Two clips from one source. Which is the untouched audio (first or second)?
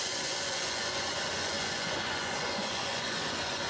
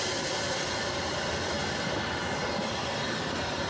second